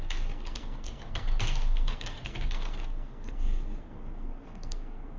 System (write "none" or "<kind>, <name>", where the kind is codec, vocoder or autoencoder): codec, SNAC